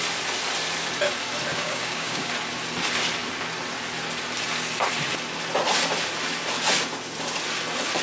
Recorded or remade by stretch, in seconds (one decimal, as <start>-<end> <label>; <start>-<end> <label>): 0.0-1.5 recorded; 1.5-2.3 remade; 2.3-8.0 recorded